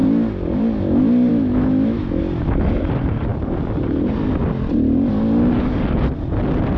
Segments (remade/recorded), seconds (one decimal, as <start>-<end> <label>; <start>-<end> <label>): 0.0-1.3 recorded; 1.3-2.2 remade; 2.2-6.8 recorded